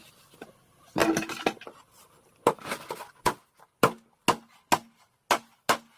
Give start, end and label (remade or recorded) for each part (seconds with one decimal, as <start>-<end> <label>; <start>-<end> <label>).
0.0-1.0 recorded; 1.0-2.7 remade; 2.7-6.0 recorded